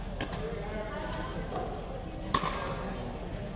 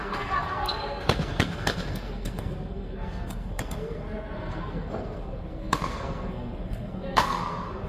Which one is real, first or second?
first